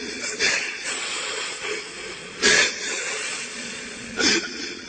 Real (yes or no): no